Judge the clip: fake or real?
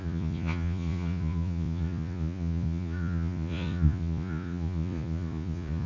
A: fake